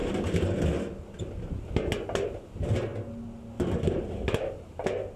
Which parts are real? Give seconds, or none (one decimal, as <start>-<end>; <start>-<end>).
0.0-5.2